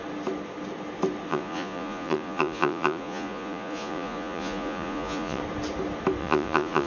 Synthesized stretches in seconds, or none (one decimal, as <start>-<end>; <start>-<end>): 1.3-5.4; 6.2-6.9